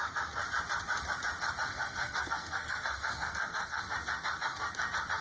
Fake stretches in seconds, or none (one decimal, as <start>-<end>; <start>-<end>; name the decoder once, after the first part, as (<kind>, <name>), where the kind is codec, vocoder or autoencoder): 1.7-3.8 (codec, SNAC)